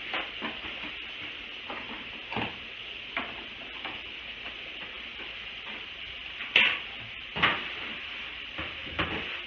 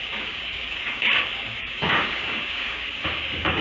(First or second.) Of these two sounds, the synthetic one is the second